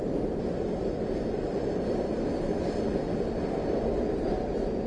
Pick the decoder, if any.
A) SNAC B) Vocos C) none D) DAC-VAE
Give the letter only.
C